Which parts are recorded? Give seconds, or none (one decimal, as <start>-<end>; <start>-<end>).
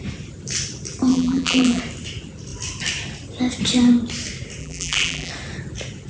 0.0-1.1; 1.8-4.6; 5.3-6.1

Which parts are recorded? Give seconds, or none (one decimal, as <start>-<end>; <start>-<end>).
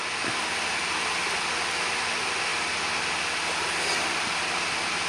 0.0-5.1